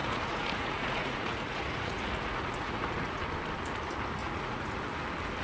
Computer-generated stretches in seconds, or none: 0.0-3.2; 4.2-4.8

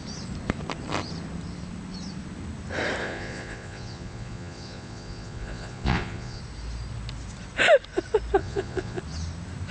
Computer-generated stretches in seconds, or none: 3.0-6.4; 8.4-9.0

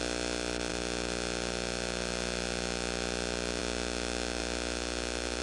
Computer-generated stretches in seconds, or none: none

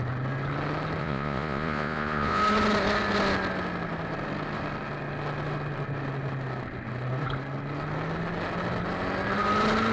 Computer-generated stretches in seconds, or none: 1.0-2.4

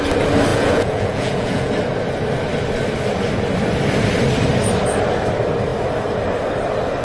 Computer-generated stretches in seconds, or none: 0.5-1.7